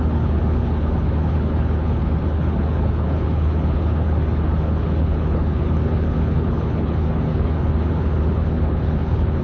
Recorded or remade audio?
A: remade